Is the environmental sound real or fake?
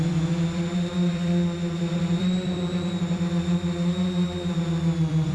fake